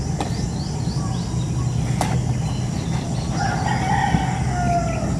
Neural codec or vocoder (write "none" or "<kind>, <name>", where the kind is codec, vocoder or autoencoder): none